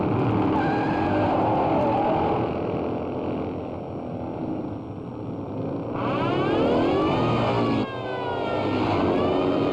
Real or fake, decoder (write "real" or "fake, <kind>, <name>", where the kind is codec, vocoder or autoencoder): real